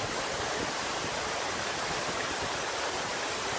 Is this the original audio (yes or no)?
yes